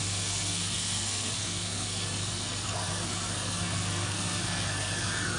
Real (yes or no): no